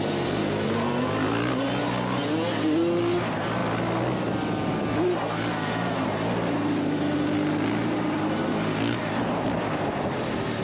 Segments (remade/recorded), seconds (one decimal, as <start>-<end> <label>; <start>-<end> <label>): 0.0-10.6 recorded